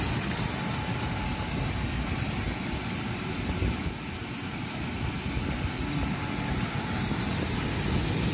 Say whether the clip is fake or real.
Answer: real